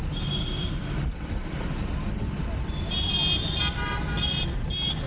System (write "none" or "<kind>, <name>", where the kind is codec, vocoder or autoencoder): none